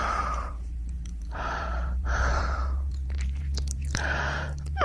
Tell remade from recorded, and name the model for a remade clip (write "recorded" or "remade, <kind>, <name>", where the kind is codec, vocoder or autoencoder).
remade, vocoder, BigVGAN v2